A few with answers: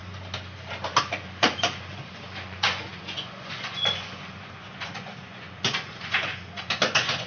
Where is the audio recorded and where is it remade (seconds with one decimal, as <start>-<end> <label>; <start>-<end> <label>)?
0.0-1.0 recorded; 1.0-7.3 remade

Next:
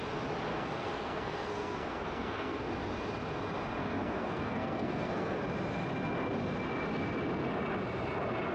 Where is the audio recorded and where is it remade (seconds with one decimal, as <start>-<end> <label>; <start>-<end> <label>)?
0.0-0.5 recorded; 0.5-2.7 remade; 2.7-3.8 recorded; 3.8-5.4 remade; 5.4-8.5 recorded

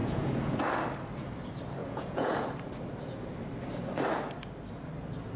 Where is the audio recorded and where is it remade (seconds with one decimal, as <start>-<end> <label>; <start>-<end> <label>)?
0.0-0.6 remade; 0.6-1.8 recorded; 1.8-2.5 remade; 2.5-5.4 recorded

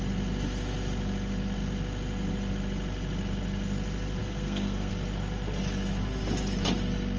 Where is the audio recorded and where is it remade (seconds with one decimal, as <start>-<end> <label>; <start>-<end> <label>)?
0.0-4.2 recorded; 4.2-4.9 remade; 4.9-7.2 recorded

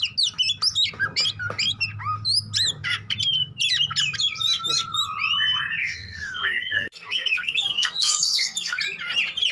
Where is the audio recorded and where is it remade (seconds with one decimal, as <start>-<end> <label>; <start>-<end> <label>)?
0.0-5.8 recorded; 5.8-8.8 remade; 8.8-9.5 recorded